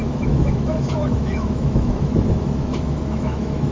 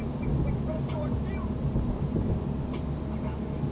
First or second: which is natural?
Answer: second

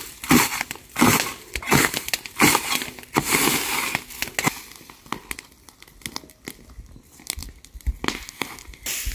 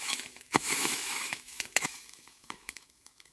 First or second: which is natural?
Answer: first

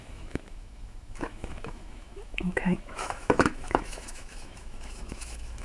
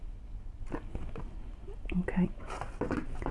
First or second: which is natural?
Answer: second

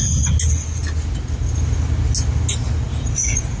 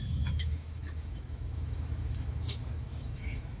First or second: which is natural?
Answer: first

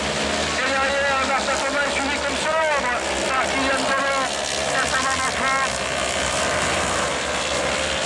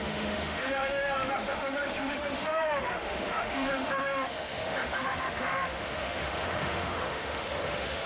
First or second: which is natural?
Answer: first